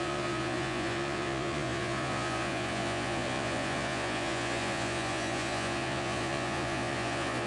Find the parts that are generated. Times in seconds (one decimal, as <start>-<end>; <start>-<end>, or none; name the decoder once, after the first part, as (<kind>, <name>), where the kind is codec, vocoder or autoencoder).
0.0-7.5 (vocoder, Vocos)